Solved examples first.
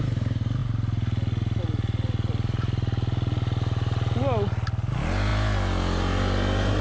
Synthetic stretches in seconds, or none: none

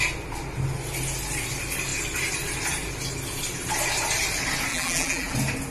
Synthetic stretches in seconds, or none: 4.7-5.3

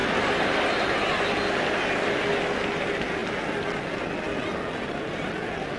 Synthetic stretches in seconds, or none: none

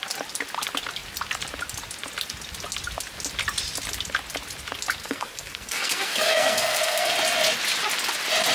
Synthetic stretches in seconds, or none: 5.0-7.1

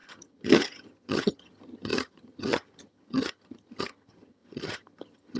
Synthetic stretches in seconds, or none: 0.0-5.4